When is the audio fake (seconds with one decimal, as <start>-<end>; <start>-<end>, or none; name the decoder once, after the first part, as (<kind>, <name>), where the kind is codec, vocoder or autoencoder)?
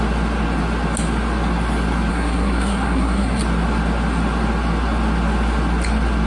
2.1-3.4 (codec, SNAC)